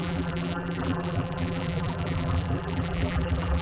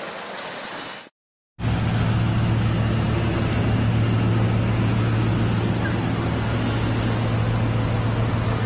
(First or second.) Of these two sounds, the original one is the second